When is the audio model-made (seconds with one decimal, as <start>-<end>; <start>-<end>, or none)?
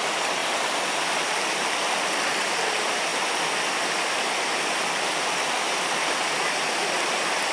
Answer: none